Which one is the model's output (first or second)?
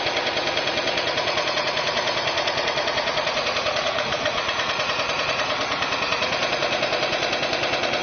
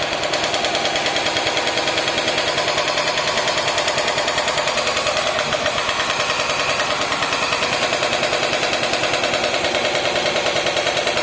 first